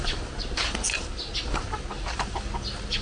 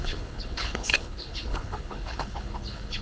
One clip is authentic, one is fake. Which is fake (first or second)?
second